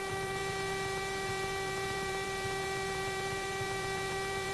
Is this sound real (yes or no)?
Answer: no